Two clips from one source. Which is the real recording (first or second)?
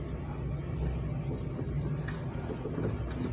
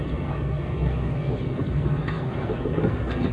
first